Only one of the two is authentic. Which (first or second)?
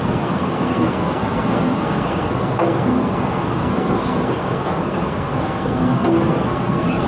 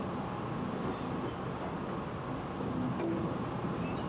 second